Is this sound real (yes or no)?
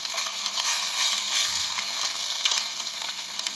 no